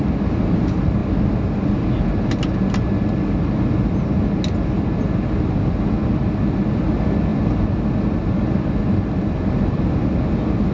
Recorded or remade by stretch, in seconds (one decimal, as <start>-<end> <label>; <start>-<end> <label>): 0.0-10.7 recorded